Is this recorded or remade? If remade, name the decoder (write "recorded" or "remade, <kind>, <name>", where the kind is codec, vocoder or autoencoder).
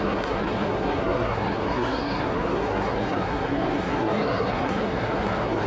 remade, codec, SNAC